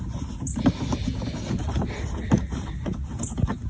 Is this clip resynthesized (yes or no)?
no